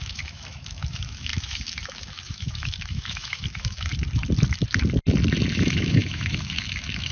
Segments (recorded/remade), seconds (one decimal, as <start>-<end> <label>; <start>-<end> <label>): 0.0-3.9 remade; 3.9-5.5 recorded; 5.5-7.1 remade